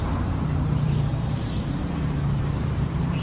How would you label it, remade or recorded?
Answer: remade